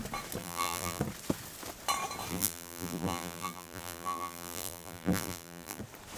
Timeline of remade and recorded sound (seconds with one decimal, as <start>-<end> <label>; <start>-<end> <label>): 0.0-0.4 recorded; 0.4-1.0 remade; 1.0-2.3 recorded; 2.3-5.8 remade; 5.8-6.2 recorded